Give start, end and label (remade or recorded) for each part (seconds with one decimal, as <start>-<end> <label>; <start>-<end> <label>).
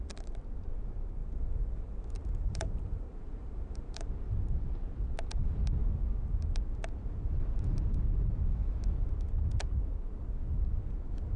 0.0-1.2 recorded; 1.2-4.1 remade; 4.1-11.4 recorded